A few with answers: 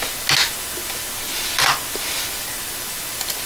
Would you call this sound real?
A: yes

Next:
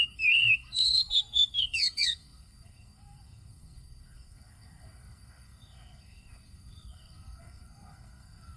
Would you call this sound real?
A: no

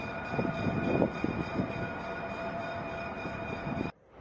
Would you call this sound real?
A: no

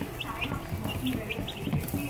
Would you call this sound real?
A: yes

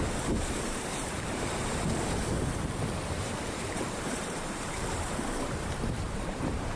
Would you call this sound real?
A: no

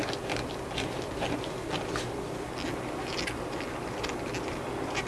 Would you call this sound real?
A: yes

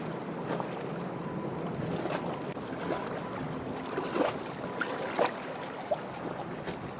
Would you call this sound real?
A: yes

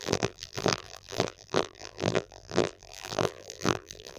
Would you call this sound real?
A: no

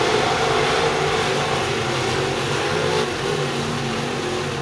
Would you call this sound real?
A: yes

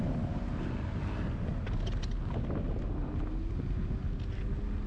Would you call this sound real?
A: yes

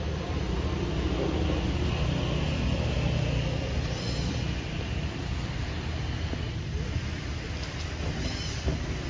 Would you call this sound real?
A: yes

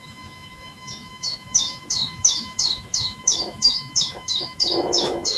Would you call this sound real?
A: no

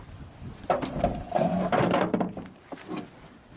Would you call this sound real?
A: yes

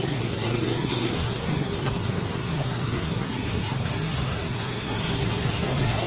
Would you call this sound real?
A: no